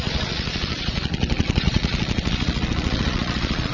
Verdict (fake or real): fake